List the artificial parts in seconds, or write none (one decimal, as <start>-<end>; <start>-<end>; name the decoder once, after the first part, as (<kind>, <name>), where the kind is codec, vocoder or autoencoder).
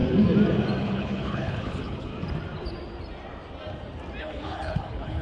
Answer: 0.8-2.1 (codec, HILCodec); 4.2-5.2